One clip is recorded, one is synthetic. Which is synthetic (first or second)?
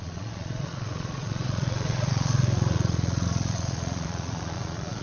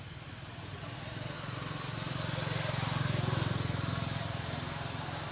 first